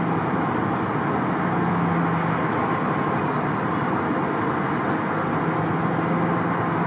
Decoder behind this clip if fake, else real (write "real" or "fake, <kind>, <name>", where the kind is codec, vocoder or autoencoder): real